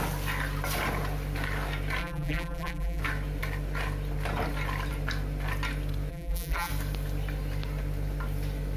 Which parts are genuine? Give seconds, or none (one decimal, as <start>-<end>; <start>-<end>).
0.0-2.0; 3.0-6.1; 6.7-8.8